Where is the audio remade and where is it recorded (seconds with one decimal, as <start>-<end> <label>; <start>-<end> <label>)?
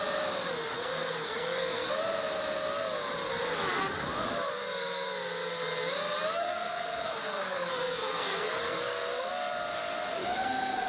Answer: 0.0-0.7 recorded; 0.7-1.9 remade; 1.9-6.4 recorded; 6.4-9.3 remade; 9.3-10.2 recorded; 10.2-10.9 remade